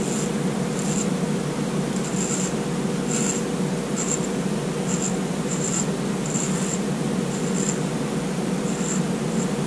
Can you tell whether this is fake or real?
real